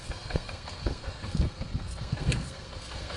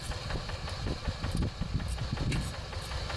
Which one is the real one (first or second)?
second